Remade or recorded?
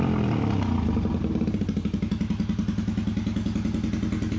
recorded